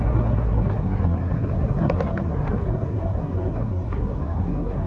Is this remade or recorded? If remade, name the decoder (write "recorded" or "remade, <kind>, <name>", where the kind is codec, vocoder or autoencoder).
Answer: remade, codec, SNAC